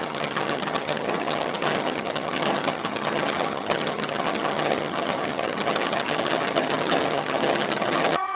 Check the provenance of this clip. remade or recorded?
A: remade